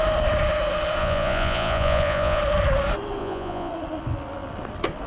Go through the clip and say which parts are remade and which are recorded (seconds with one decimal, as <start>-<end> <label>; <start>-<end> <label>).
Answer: 0.0-1.0 recorded; 1.0-2.4 remade; 2.4-3.2 recorded; 3.2-3.7 remade; 3.7-5.1 recorded